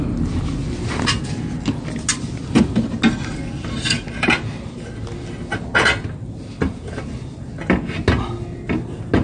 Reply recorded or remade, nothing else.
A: recorded